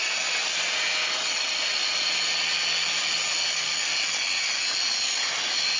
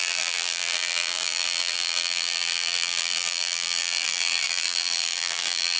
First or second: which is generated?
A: second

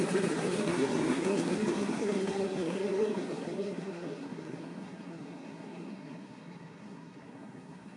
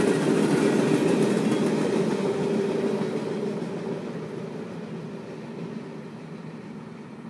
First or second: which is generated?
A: first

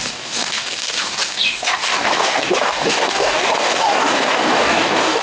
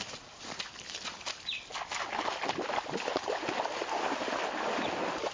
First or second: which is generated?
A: first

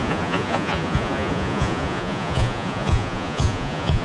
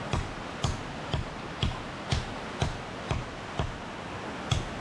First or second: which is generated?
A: first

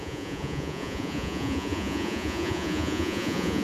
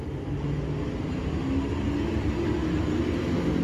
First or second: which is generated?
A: first